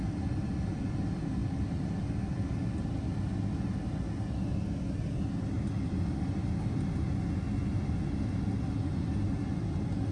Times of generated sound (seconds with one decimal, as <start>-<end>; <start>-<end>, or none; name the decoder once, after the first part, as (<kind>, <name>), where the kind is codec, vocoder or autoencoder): 1.4-2.0 (vocoder, BigVGAN v2)